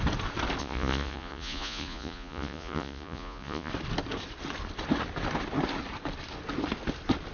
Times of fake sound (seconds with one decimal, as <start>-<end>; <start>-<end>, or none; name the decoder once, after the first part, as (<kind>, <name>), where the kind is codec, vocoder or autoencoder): 0.6-3.7 (vocoder, Vocos)